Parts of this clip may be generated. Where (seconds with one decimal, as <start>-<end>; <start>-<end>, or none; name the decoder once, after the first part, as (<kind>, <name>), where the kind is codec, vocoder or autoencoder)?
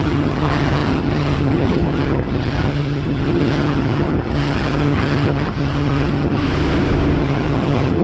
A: 0.0-6.4 (vocoder, HiFi-GAN); 7.2-8.0